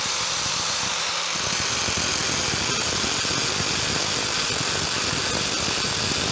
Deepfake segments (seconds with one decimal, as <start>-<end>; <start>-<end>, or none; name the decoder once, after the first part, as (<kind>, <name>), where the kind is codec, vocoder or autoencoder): none